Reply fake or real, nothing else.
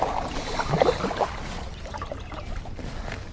real